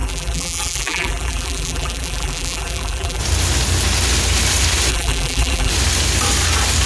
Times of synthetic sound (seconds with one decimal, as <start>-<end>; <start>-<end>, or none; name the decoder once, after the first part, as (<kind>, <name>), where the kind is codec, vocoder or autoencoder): 0.0-3.2 (vocoder, BigVGAN v2); 4.9-5.7